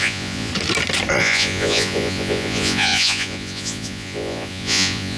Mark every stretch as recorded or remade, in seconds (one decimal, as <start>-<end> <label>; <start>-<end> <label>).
0.0-0.5 remade; 0.5-1.2 recorded; 1.2-5.2 remade